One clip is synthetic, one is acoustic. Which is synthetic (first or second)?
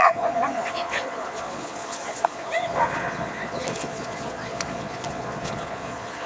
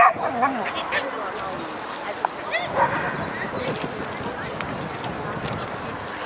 first